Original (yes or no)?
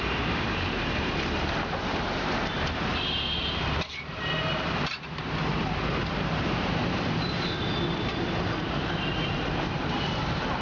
no